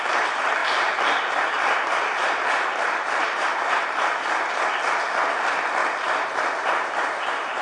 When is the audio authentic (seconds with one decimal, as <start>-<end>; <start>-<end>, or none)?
0.0-0.6; 4.6-5.8